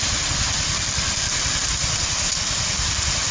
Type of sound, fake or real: real